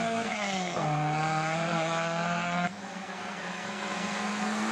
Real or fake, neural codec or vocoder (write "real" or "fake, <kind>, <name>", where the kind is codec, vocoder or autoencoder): fake, codec, SNAC